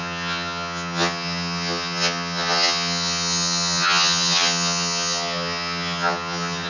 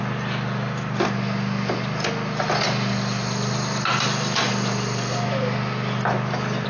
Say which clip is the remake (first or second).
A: first